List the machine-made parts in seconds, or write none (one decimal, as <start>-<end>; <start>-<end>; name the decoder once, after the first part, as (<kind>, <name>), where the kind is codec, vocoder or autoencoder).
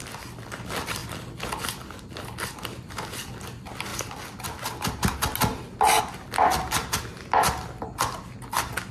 none